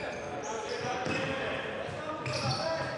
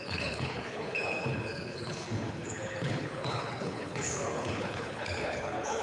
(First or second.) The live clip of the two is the first